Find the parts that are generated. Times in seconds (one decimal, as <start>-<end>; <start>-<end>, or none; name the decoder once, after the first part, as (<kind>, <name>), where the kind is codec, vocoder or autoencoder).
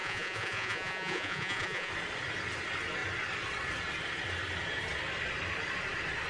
0.0-1.9 (vocoder, Vocos)